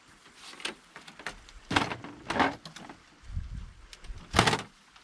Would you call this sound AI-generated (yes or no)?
no